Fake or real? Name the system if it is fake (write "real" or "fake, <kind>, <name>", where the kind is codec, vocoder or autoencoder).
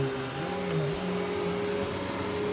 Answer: real